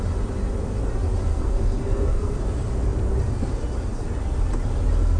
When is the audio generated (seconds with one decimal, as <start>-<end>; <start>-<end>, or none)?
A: 1.3-2.4

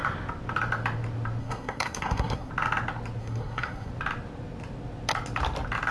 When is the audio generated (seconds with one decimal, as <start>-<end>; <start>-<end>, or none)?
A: 1.4-2.5; 3.2-3.9

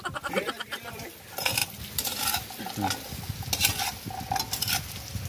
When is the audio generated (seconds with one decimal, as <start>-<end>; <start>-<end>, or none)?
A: none